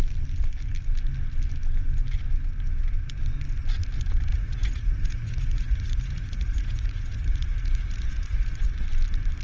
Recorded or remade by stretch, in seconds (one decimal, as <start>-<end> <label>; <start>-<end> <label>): 0.0-4.3 recorded; 4.3-8.7 remade; 8.7-9.4 recorded